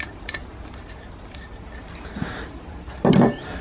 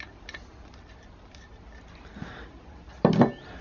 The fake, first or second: first